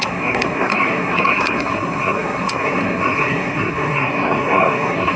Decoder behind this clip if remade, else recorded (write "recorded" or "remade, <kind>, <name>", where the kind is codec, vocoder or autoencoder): remade, codec, SNAC